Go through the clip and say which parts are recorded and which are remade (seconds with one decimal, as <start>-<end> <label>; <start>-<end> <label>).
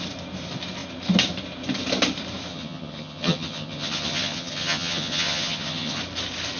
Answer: 0.0-2.5 recorded; 2.5-6.0 remade; 6.0-6.6 recorded